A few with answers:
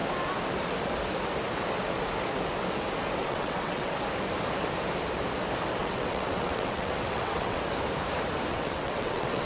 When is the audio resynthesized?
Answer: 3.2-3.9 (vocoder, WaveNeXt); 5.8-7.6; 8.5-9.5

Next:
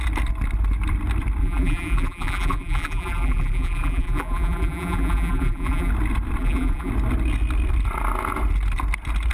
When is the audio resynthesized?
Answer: 1.4-5.9 (vocoder, BigVGAN v2); 6.4-6.9

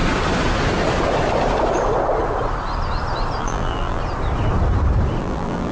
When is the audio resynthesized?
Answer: 3.4-4.0 (vocoder, BigVGAN v2); 5.2-5.7

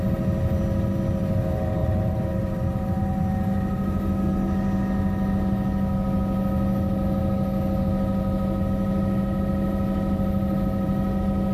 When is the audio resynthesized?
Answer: 1.8-3.0 (vocoder, BigVGAN v2)